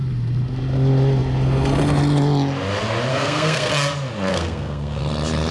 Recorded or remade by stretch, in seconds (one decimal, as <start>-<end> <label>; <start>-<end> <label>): 0.0-3.1 recorded; 3.1-3.7 remade; 3.7-4.3 recorded; 4.3-5.0 remade; 5.0-5.5 recorded